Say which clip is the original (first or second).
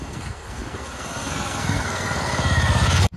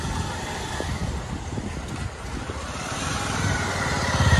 second